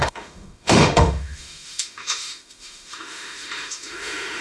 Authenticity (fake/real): fake